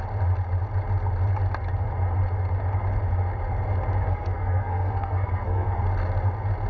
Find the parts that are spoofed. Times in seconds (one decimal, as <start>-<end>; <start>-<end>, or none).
4.0-5.8